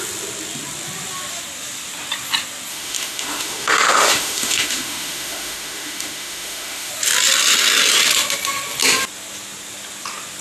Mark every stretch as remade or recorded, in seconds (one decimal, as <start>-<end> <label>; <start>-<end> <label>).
0.0-2.7 recorded; 2.7-6.9 remade; 6.9-10.4 recorded